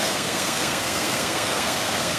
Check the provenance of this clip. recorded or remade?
remade